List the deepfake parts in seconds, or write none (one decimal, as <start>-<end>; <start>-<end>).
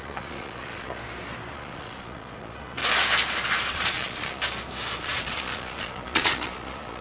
0.0-1.0; 1.5-2.8; 3.7-4.4; 5.0-7.0